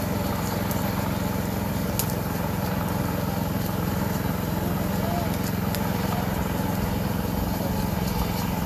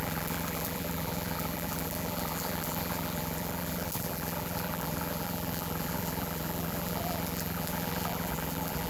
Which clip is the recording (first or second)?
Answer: first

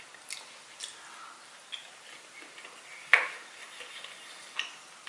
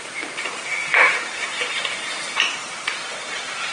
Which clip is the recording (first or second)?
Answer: first